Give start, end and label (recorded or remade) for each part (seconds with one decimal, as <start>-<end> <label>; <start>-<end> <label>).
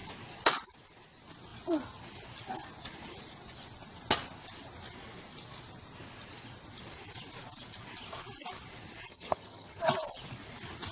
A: 0.0-9.1 recorded; 9.1-9.8 remade; 9.8-10.9 recorded